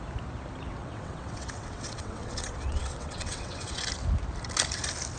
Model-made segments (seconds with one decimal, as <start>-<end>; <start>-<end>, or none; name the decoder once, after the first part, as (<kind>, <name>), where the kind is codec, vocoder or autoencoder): 0.7-3.8 (vocoder, WaveNeXt)